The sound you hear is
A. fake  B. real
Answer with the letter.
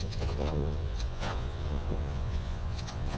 A